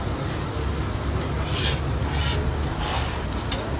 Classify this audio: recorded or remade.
recorded